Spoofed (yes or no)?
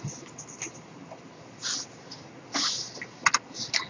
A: no